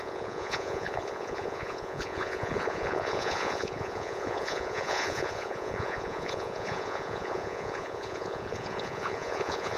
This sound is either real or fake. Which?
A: fake